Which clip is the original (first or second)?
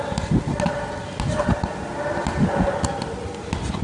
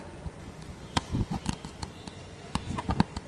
first